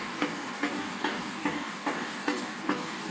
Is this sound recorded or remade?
remade